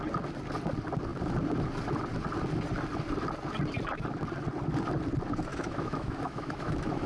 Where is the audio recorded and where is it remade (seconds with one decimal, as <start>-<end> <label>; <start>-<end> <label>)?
0.0-5.5 recorded; 5.5-7.1 remade

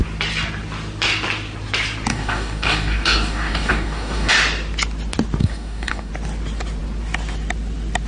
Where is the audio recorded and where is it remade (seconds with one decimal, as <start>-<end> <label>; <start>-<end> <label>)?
0.0-2.1 recorded; 2.1-4.3 remade; 4.3-5.4 recorded; 5.4-6.1 remade; 6.1-8.1 recorded

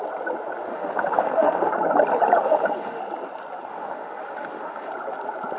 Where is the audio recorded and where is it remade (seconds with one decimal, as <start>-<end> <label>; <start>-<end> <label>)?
0.0-0.7 recorded; 0.7-1.7 remade; 1.7-2.4 recorded; 2.4-3.0 remade; 3.0-3.7 recorded; 3.7-4.9 remade; 4.9-5.6 recorded

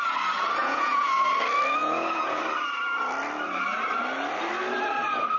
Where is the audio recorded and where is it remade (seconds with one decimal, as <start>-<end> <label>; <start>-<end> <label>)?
0.0-0.6 recorded; 0.6-1.2 remade; 1.2-1.8 recorded; 1.8-2.4 remade; 2.4-5.4 recorded